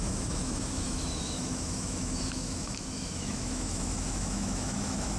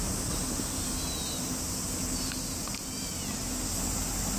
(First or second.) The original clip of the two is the second